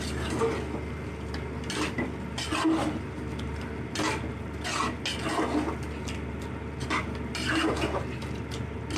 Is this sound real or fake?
real